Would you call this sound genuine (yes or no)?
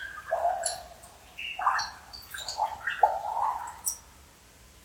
yes